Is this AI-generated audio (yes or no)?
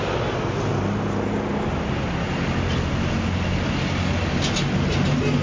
no